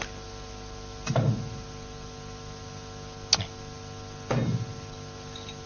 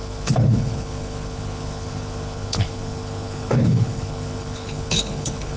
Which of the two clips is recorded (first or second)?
first